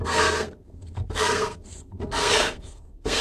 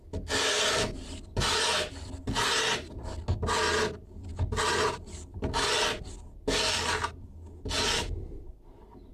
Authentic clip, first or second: second